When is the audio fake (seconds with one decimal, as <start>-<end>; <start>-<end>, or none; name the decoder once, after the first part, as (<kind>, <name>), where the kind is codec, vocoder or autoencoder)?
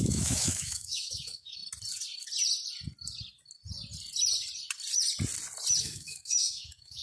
0.0-1.6 (autoencoder, DAC-VAE); 5.8-7.0